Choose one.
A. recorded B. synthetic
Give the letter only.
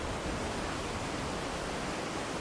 B